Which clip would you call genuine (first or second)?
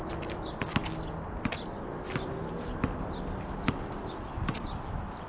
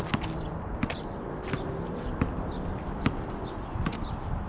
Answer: first